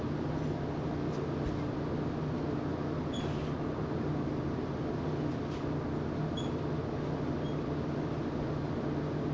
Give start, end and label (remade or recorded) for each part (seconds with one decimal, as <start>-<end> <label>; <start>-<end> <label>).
0.0-9.3 recorded